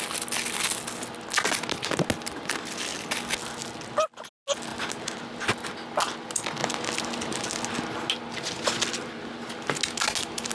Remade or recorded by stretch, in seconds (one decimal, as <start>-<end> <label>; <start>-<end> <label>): 0.0-10.5 recorded